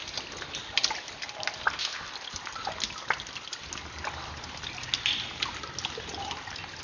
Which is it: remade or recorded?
recorded